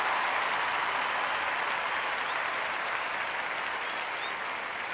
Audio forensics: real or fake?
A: real